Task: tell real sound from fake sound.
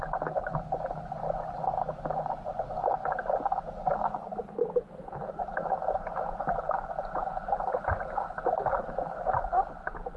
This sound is real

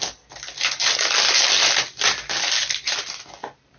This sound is real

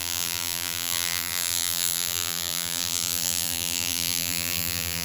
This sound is fake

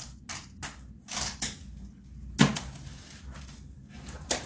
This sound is real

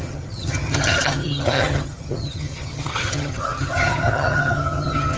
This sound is fake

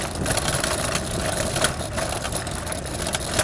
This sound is real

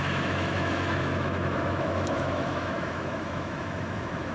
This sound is fake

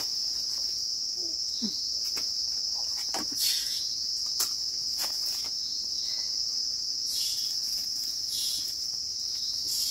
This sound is fake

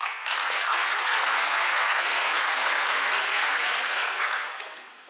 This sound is fake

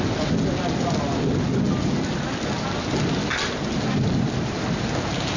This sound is real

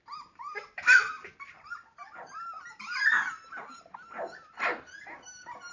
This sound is real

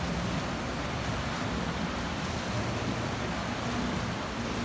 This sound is real